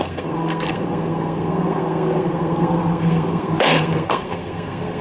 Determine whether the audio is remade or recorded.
remade